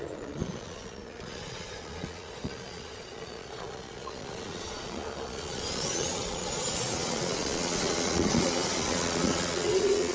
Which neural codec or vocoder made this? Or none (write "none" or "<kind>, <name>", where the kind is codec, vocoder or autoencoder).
vocoder, Vocos